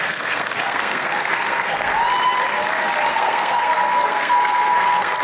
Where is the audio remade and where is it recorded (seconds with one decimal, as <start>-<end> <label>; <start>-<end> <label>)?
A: 0.0-1.9 remade; 1.9-3.1 recorded; 3.1-5.2 remade